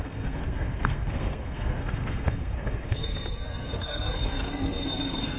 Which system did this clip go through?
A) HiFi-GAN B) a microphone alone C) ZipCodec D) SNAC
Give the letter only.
D